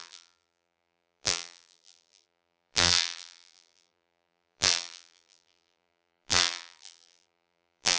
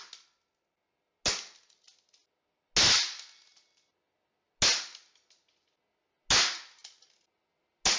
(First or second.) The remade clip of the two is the first